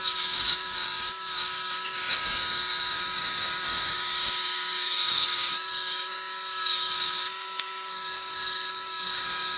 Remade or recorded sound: remade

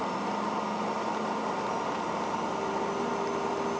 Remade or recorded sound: recorded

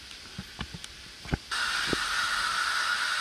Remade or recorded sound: recorded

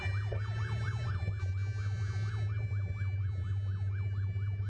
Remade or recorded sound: recorded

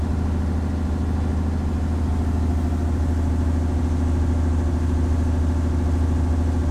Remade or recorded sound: recorded